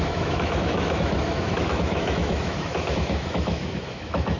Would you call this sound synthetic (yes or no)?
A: yes